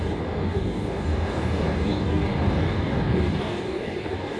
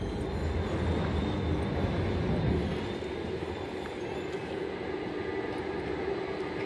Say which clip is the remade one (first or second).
first